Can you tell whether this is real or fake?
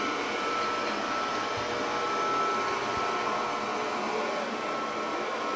real